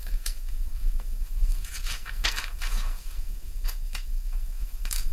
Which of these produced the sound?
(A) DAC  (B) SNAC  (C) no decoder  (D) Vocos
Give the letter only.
B